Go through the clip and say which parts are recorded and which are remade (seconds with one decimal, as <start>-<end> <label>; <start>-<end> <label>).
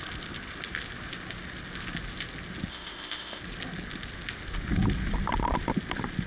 0.0-2.7 recorded; 2.7-3.4 remade; 3.4-6.3 recorded